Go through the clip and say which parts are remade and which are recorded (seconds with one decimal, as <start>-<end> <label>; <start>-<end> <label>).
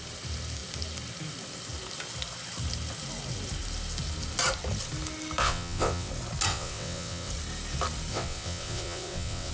0.0-5.4 recorded; 5.4-6.1 remade; 6.1-6.5 recorded; 6.5-7.3 remade; 7.3-8.1 recorded; 8.1-9.5 remade